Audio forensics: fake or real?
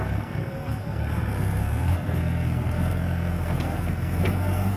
fake